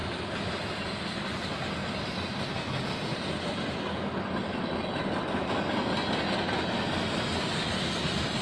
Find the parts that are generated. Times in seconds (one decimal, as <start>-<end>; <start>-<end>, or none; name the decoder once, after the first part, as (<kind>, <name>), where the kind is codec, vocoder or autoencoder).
none